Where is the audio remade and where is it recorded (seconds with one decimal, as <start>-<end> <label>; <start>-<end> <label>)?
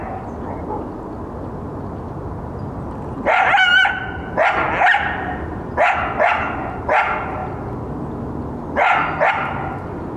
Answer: 0.0-10.2 recorded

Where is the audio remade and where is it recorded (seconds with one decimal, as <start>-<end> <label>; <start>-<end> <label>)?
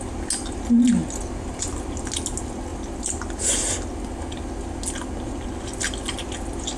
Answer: 0.0-6.8 recorded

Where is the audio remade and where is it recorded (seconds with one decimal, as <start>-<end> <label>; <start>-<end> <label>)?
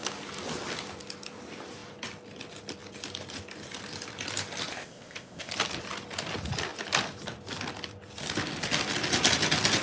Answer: 0.0-4.7 recorded; 4.7-5.5 remade; 5.5-9.8 recorded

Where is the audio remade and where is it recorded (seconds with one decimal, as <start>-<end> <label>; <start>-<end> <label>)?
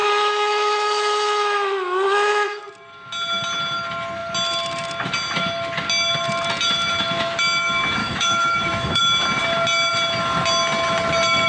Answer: 0.0-2.6 remade; 2.6-8.0 recorded; 8.0-9.0 remade; 9.0-11.5 recorded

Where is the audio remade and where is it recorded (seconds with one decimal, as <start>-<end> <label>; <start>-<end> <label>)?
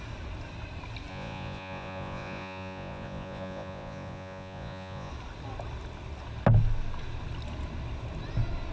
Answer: 0.0-1.1 recorded; 1.1-5.1 remade; 5.1-8.7 recorded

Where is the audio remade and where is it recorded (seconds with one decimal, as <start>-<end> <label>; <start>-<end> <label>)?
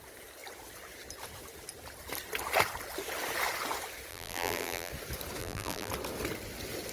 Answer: 0.0-4.1 recorded; 4.1-4.9 remade; 4.9-5.4 recorded; 5.4-5.9 remade; 5.9-6.9 recorded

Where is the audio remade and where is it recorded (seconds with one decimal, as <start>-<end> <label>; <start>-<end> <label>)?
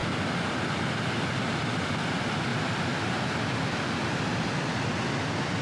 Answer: 0.0-5.6 recorded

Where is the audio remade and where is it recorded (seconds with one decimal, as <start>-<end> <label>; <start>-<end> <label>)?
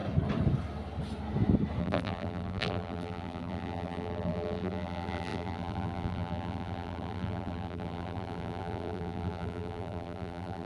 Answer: 0.0-1.8 recorded; 1.8-10.7 remade